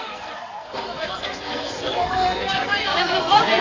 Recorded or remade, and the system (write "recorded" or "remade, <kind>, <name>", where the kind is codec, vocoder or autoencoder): remade, codec, SNAC